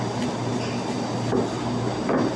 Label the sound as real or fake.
real